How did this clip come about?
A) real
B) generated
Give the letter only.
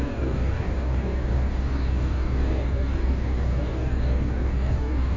B